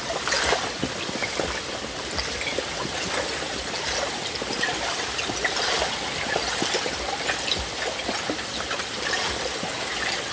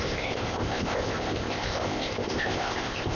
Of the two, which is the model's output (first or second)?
second